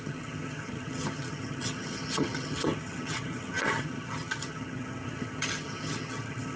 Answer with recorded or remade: remade